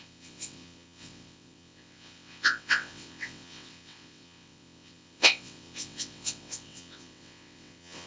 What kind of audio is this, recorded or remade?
remade